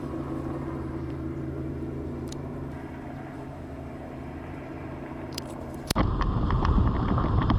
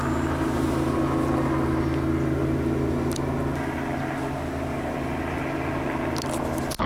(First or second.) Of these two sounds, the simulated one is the first